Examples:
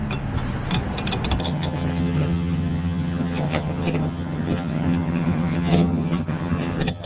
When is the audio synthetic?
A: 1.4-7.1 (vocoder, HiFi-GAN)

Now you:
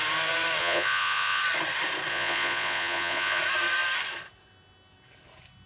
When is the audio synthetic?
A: 0.6-1.4 (vocoder, Vocos); 2.1-3.4